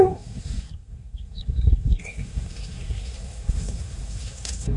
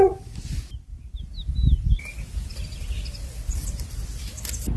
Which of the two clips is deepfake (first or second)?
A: first